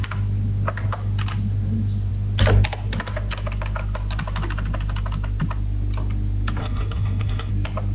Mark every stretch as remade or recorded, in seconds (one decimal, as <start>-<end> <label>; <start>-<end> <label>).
0.0-6.6 recorded; 6.6-7.5 remade; 7.5-7.9 recorded